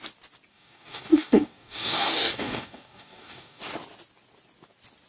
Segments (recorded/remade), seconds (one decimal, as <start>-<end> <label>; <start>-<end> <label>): 0.0-0.5 recorded; 0.5-3.6 remade; 3.6-5.1 recorded